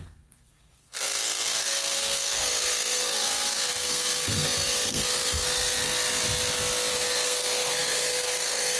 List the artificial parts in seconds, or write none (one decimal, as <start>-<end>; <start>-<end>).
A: 0.0-5.8; 6.9-8.8